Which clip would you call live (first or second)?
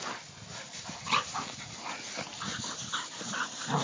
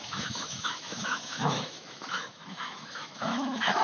first